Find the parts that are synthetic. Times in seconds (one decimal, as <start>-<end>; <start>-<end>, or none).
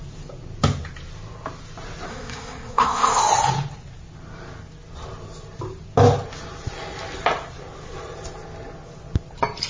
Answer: 2.1-3.2